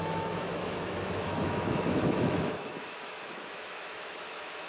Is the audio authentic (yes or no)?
no